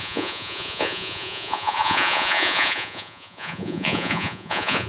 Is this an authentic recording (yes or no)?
no